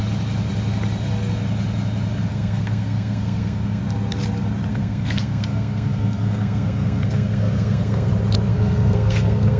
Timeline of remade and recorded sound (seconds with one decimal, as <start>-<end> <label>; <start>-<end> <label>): 0.0-2.3 recorded; 2.3-3.8 remade; 3.8-4.7 recorded; 4.7-8.1 remade; 8.1-8.5 recorded; 8.5-9.6 remade